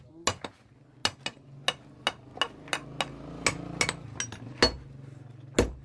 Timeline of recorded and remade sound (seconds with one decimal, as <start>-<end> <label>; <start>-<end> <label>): 0.0-5.8 recorded